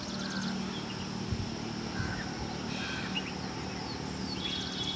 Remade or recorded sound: recorded